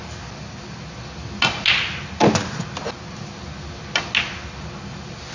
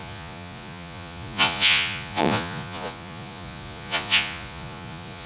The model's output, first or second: second